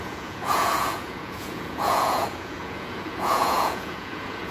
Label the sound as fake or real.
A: fake